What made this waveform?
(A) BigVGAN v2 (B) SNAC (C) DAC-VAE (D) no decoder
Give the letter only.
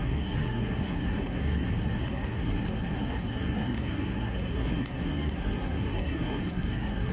B